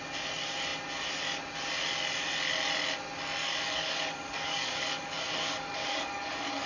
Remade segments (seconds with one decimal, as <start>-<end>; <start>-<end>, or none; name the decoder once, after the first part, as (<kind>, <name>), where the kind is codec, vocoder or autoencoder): 3.4-6.7 (codec, DAC)